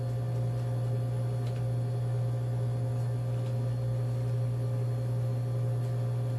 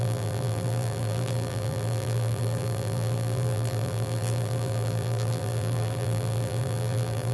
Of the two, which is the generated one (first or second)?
second